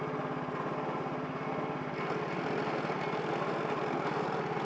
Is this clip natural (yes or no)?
yes